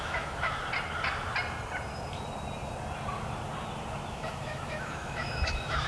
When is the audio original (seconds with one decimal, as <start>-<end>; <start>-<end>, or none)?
0.6-4.1